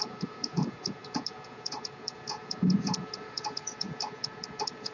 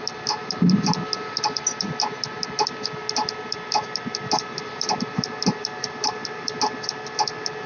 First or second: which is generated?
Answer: first